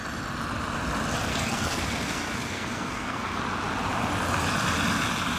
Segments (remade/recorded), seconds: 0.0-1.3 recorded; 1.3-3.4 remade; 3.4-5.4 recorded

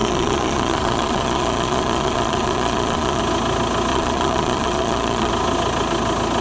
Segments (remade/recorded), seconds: 0.0-3.2 remade; 3.2-3.9 recorded; 3.9-5.3 remade; 5.3-6.4 recorded